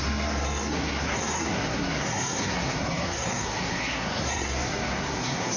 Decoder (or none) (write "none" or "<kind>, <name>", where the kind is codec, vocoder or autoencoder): codec, SNAC